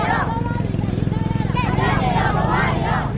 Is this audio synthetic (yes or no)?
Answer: no